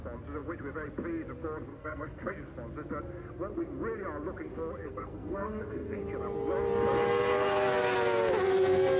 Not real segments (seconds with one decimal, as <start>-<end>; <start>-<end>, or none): 1.7-2.3; 4.8-6.0